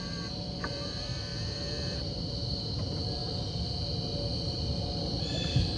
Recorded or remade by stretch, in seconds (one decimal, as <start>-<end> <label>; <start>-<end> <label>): 0.0-3.2 remade; 3.2-5.8 recorded